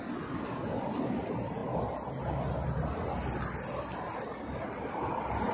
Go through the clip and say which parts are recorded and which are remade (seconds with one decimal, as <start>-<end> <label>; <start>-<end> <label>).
0.0-5.5 recorded